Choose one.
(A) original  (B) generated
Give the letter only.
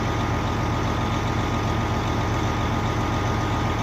A